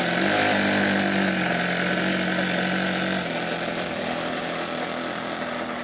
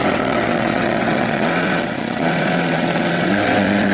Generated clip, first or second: second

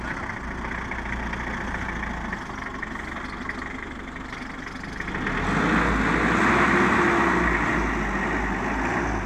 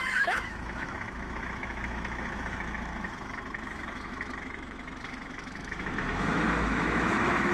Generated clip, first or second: second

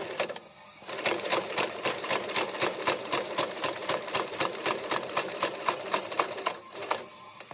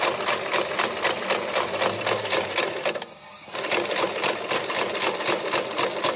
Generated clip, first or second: first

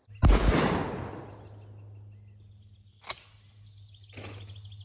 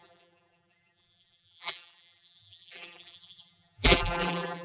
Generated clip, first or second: second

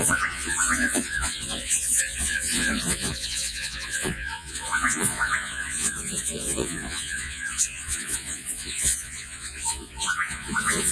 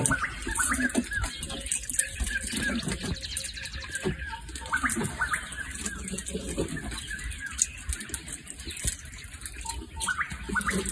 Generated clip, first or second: first